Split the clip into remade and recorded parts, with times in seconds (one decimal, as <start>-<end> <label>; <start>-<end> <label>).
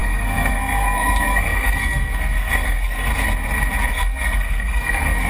0.0-3.1 remade; 3.1-3.9 recorded; 3.9-5.3 remade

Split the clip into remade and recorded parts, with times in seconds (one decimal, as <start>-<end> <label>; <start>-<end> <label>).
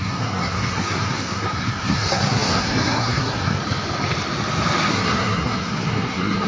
0.0-3.6 remade; 3.6-4.9 recorded; 4.9-6.5 remade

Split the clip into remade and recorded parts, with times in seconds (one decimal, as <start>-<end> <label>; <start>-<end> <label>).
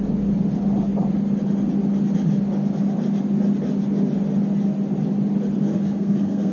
0.0-5.7 recorded; 5.7-6.5 remade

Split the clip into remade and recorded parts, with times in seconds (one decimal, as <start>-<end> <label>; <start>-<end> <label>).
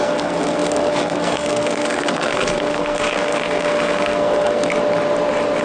0.0-4.7 remade; 4.7-5.6 recorded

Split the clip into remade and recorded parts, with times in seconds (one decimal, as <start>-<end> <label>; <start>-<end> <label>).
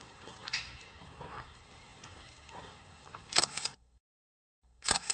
0.0-5.1 remade